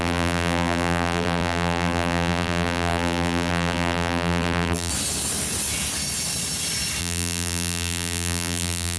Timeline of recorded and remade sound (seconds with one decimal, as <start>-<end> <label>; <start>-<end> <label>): 0.0-4.9 remade; 4.9-7.0 recorded; 7.0-9.0 remade